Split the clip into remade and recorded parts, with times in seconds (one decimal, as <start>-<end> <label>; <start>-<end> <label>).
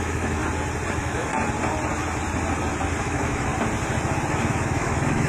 0.0-0.4 remade; 0.4-0.9 recorded; 0.9-1.3 remade; 1.3-3.0 recorded; 3.0-3.5 remade; 3.5-4.3 recorded; 4.3-5.3 remade